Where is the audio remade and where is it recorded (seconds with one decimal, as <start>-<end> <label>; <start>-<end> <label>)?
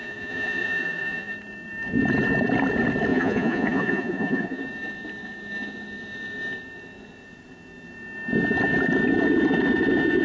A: 0.0-1.3 remade; 1.3-3.1 recorded; 3.1-4.6 remade; 4.6-10.2 recorded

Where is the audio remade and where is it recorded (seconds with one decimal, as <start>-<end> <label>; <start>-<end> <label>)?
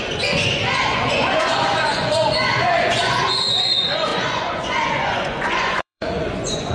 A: 0.0-6.7 remade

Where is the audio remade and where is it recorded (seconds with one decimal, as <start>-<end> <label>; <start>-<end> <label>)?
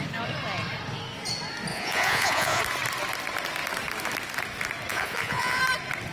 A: 0.0-1.7 recorded; 1.7-2.6 remade; 2.6-4.9 recorded; 4.9-5.6 remade; 5.6-6.1 recorded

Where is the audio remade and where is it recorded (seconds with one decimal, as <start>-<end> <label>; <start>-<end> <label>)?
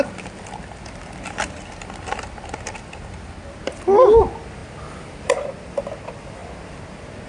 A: 0.0-7.3 recorded